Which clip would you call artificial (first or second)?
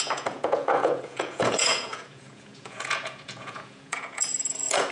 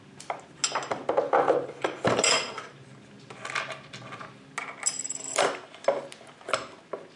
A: first